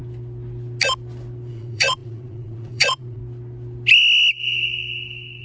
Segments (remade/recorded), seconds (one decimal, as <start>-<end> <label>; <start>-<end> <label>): 0.0-1.5 recorded; 1.5-3.2 remade; 3.2-5.4 recorded